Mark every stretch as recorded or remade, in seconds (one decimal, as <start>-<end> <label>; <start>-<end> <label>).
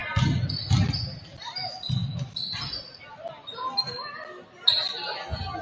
0.0-5.6 recorded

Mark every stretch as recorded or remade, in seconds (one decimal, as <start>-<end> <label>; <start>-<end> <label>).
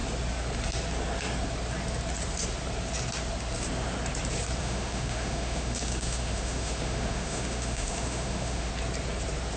0.0-4.6 recorded; 4.6-8.7 remade; 8.7-9.6 recorded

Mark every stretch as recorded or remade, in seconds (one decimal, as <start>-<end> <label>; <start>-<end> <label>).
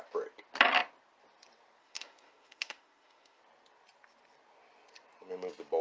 0.0-1.8 recorded; 1.8-3.4 remade; 3.4-5.8 recorded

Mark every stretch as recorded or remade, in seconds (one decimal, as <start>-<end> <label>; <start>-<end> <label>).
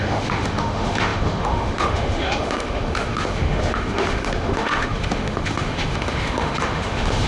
0.0-7.3 remade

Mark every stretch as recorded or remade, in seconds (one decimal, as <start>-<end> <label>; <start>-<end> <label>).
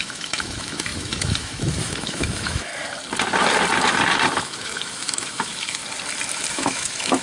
0.0-2.7 remade; 2.7-4.4 recorded; 4.4-5.8 remade; 5.8-6.5 recorded; 6.5-7.2 remade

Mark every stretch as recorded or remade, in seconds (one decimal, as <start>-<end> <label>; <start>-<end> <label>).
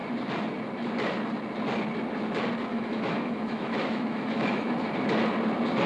0.0-2.7 recorded; 2.7-4.7 remade; 4.7-5.9 recorded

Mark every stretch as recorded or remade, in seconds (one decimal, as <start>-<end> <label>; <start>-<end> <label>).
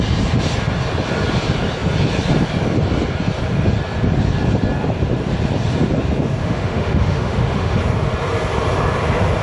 0.0-6.4 recorded; 6.4-7.8 remade; 7.8-9.4 recorded